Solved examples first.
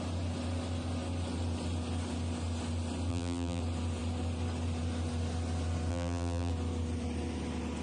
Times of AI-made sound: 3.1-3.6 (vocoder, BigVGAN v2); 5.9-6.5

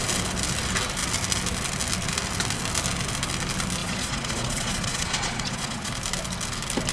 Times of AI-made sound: 3.8-5.9 (vocoder, Vocos)

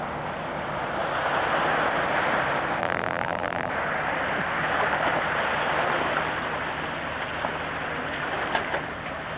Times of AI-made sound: 2.8-3.7 (vocoder, BigVGAN v2)